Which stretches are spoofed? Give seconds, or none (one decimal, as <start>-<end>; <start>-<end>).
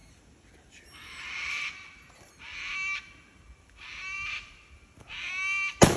none